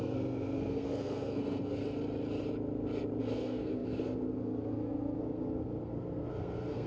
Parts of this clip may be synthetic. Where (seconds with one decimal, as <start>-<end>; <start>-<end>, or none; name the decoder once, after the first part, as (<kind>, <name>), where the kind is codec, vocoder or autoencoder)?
0.0-1.8 (codec, SNAC); 3.2-6.9